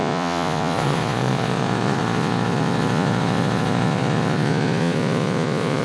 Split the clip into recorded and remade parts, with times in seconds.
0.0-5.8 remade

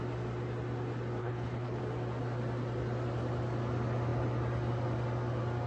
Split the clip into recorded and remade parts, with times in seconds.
0.0-1.2 recorded; 1.2-1.8 remade; 1.8-5.7 recorded

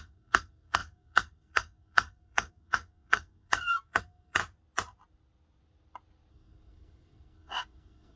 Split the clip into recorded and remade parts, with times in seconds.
0.0-4.4 remade; 4.4-6.3 recorded; 6.3-8.2 remade

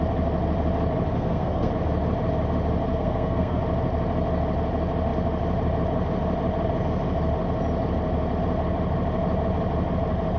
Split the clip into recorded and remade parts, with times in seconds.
0.0-1.1 recorded; 1.1-1.7 remade; 1.7-2.9 recorded; 2.9-3.6 remade; 3.6-10.4 recorded

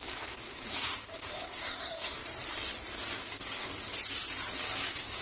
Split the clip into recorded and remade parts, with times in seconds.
0.0-2.2 remade; 2.2-3.0 recorded; 3.0-3.9 remade; 3.9-4.5 recorded; 4.5-5.2 remade

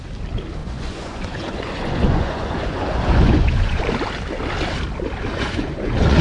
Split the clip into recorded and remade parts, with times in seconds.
0.0-0.6 recorded; 0.6-3.8 remade; 3.8-5.3 recorded; 5.3-6.2 remade